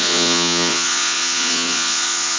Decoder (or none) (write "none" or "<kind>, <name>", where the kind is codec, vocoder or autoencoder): vocoder, Vocos